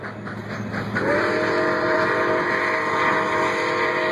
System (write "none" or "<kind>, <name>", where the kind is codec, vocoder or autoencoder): none